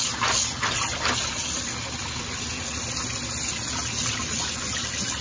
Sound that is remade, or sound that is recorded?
recorded